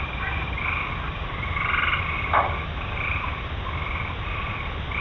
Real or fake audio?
real